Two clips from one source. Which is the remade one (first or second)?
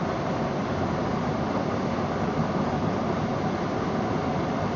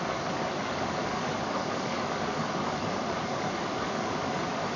second